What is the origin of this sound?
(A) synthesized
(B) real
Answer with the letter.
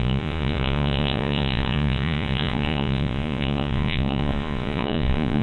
A